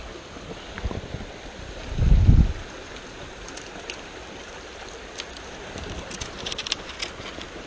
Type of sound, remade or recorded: recorded